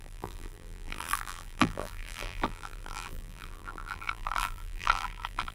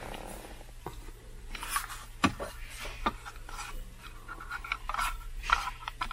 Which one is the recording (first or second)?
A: second